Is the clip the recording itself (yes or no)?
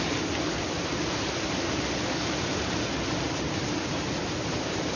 yes